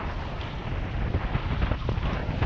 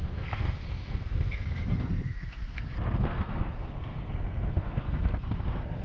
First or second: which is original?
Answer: first